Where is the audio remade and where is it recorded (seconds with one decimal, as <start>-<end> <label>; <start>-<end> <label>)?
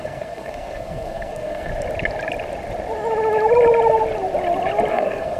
0.0-1.7 remade; 1.7-4.9 recorded; 4.9-5.4 remade